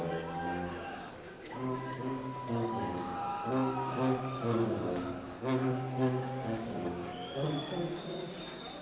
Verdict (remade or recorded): remade